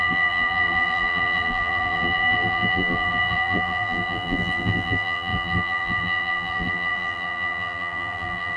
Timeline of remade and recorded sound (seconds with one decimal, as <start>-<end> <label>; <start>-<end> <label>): 0.0-8.6 remade